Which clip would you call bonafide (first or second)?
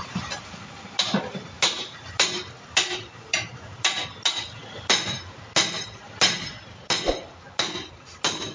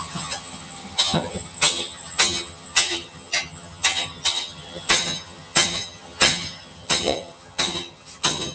first